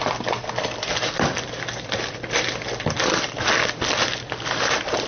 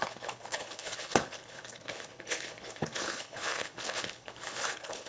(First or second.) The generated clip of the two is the second